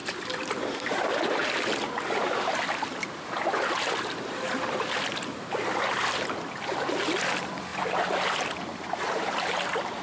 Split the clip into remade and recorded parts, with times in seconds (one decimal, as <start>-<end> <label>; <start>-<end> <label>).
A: 0.0-10.0 recorded